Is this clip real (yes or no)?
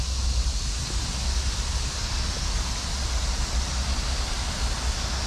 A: yes